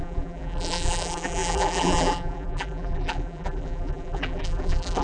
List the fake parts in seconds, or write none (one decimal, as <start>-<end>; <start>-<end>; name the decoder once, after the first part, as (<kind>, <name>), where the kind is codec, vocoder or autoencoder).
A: 0.0-5.0 (vocoder, BigVGAN v2)